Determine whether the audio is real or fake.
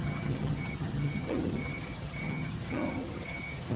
fake